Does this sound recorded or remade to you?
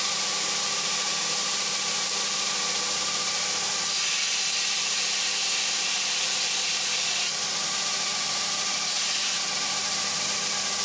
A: recorded